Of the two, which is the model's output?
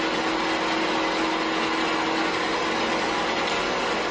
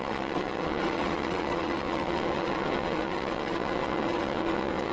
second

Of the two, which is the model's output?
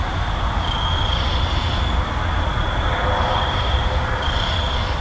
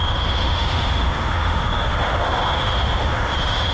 second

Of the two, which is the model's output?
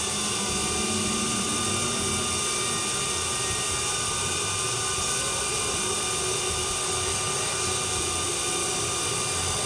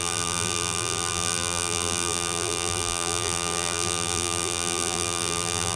second